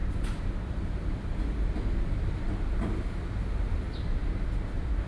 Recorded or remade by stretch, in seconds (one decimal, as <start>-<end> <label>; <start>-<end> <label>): 0.0-3.1 remade; 3.1-4.2 recorded; 4.2-5.1 remade